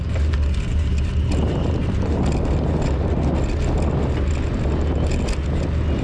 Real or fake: real